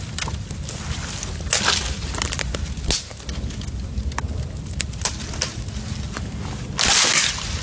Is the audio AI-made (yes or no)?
no